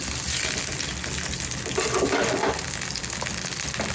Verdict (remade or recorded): recorded